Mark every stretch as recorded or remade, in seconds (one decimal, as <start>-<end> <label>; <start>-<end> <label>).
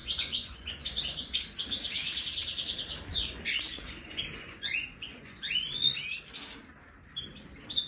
0.0-1.4 remade; 1.4-3.1 recorded; 3.1-5.9 remade; 5.9-7.9 recorded